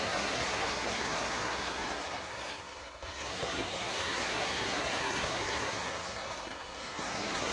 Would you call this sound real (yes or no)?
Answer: no